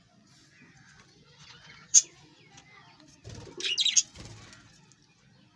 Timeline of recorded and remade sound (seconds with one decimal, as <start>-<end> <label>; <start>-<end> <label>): 0.0-2.3 remade; 2.3-5.6 recorded